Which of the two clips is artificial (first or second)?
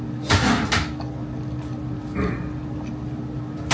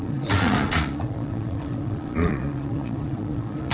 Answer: second